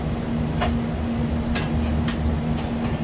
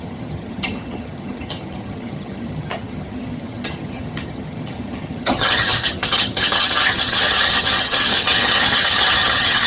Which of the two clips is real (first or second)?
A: first